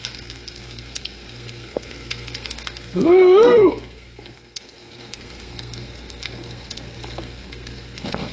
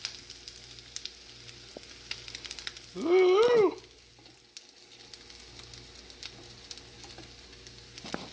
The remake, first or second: first